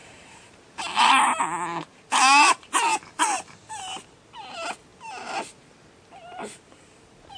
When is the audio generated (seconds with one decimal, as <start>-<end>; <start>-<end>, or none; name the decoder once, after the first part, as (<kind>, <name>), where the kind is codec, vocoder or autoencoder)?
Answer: 0.0-1.1 (vocoder, BigVGAN v2)